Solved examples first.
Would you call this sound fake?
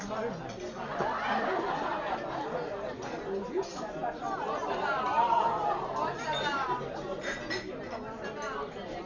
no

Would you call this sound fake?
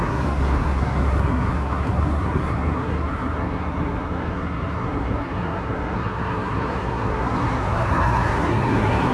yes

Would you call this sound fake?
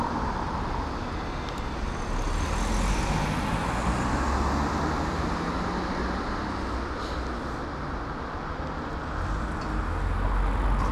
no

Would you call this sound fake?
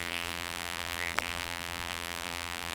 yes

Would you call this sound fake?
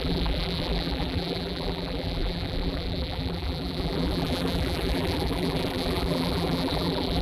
yes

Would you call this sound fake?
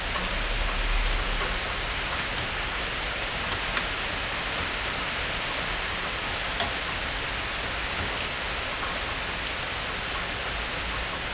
no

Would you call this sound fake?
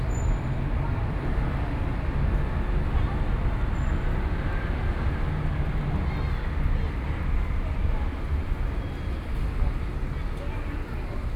no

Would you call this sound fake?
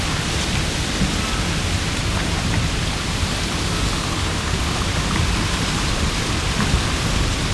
no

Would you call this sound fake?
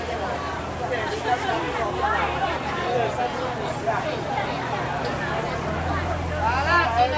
no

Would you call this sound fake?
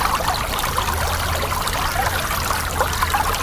no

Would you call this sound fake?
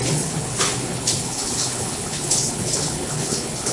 yes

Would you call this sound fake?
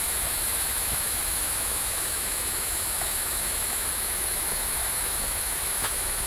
yes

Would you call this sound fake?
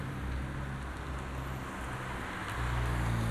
no